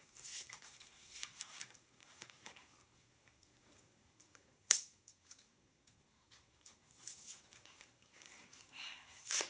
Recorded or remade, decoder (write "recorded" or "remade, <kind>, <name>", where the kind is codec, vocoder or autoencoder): remade, codec, SNAC